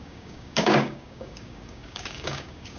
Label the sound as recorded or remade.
remade